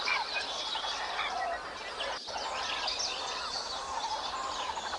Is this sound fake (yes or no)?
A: no